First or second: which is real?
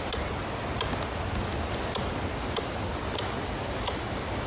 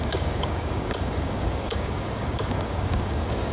first